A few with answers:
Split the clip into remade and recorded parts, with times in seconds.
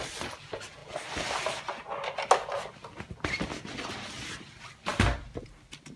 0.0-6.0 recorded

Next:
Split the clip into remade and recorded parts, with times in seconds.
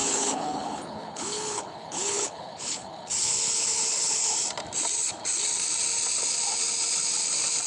0.0-4.3 remade; 4.3-7.7 recorded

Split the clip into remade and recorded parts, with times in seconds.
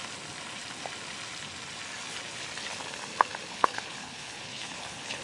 0.0-3.5 recorded; 3.5-5.2 remade